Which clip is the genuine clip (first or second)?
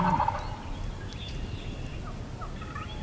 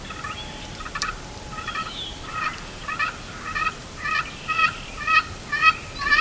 first